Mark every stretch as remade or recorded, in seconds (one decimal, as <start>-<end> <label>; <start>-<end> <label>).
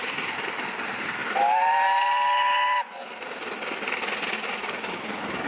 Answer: 0.0-4.3 recorded; 4.3-5.5 remade